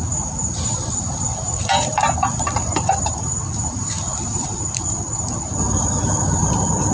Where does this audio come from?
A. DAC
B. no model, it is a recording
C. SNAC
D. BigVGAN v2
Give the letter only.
D